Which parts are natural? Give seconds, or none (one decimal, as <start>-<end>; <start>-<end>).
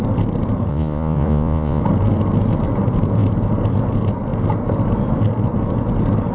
0.0-0.7; 1.8-6.3